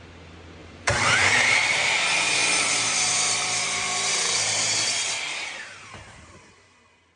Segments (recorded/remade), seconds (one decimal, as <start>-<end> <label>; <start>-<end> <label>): 0.0-0.6 recorded; 0.6-1.9 remade; 1.9-2.4 recorded; 2.4-6.5 remade; 6.5-7.2 recorded